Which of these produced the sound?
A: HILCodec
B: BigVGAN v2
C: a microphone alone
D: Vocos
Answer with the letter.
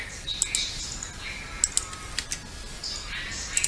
C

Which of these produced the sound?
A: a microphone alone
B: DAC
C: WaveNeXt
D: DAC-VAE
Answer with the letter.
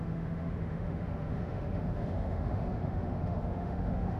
D